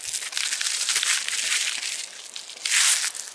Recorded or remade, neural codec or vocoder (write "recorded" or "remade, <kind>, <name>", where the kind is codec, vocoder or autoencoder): recorded